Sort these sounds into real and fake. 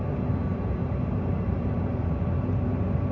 fake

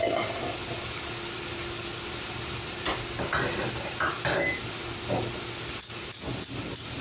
real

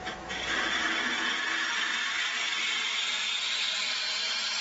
real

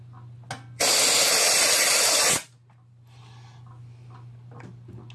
real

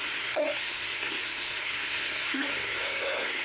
fake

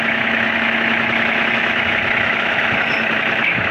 fake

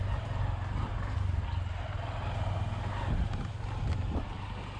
real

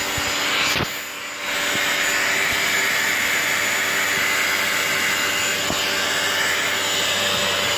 real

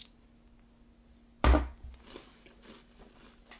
real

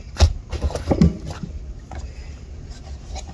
real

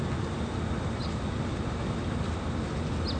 real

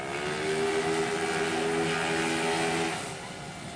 real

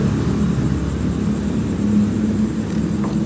real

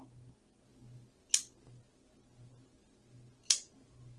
real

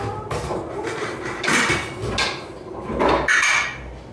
real